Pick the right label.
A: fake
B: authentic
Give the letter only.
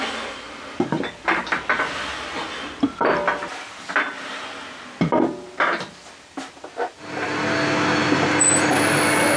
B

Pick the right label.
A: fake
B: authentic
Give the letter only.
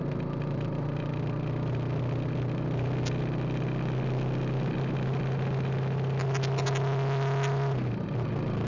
B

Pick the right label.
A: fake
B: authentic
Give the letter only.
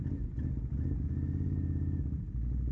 B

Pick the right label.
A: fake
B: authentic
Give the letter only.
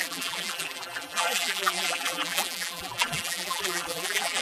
A